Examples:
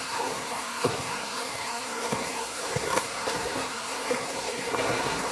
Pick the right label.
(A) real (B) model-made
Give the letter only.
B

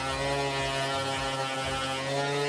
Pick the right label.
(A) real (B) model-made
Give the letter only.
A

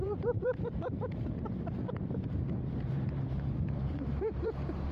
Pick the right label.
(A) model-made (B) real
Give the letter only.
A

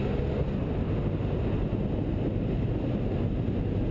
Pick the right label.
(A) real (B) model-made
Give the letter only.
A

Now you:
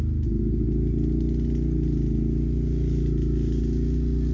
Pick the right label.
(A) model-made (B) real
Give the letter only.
B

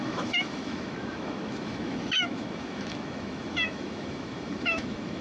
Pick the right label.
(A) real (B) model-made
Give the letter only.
B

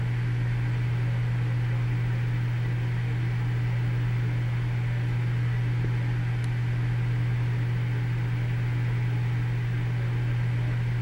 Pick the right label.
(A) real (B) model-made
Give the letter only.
A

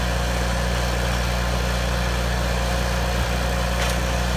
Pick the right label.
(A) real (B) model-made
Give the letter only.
B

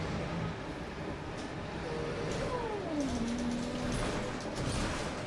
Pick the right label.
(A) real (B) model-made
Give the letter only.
A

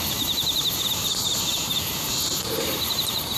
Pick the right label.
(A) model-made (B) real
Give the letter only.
A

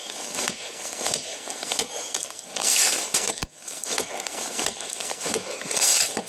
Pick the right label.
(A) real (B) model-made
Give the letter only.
B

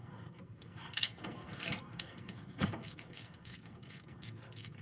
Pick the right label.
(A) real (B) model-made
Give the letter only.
B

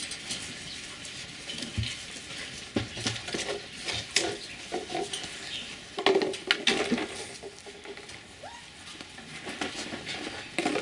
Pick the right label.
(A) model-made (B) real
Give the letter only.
B